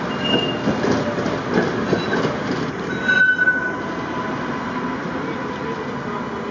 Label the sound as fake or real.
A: real